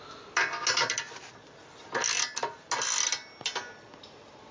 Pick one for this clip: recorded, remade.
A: recorded